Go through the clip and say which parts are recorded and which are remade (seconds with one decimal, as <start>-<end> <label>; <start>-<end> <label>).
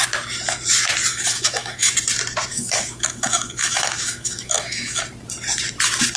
0.0-1.1 recorded; 1.1-1.9 remade; 1.9-2.5 recorded; 2.5-5.0 remade; 5.0-6.2 recorded